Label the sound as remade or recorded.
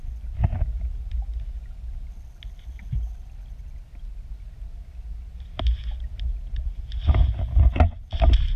recorded